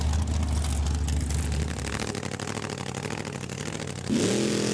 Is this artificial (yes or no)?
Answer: no